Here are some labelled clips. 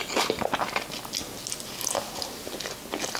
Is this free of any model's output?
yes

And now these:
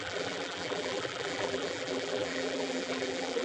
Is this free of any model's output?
no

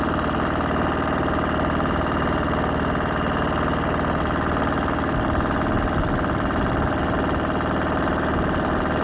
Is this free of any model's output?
yes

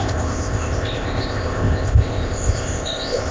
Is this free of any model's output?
no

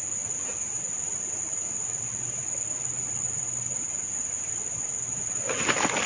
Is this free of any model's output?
yes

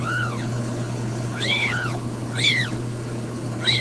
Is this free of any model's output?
no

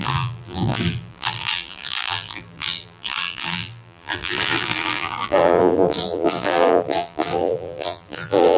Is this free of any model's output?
no